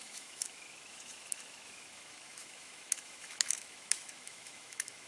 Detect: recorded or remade remade